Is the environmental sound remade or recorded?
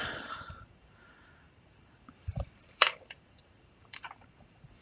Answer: remade